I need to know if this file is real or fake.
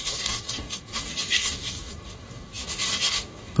fake